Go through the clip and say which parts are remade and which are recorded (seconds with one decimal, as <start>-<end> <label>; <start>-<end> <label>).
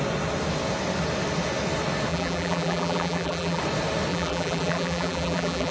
0.0-2.1 recorded; 2.1-3.6 remade; 3.6-4.1 recorded; 4.1-5.7 remade